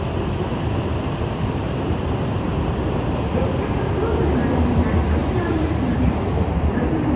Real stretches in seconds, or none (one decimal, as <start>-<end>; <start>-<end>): 0.0-0.5; 3.4-5.2; 6.2-7.2